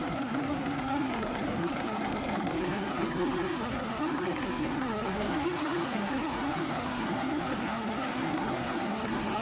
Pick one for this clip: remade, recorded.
remade